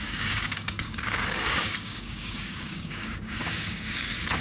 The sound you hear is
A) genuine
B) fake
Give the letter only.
B